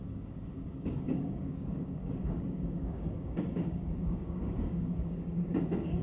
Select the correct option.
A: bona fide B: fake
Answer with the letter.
B